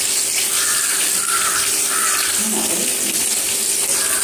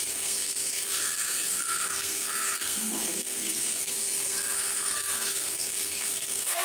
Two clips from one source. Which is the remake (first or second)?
second